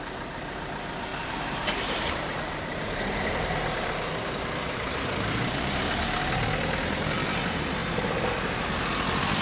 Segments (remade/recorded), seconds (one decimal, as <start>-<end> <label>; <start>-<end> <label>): 0.0-1.1 recorded; 1.1-6.2 remade; 6.2-9.4 recorded